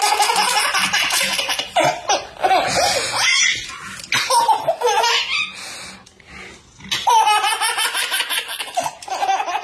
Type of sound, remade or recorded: recorded